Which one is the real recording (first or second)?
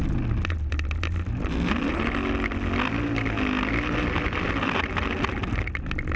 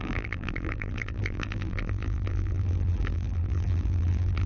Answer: first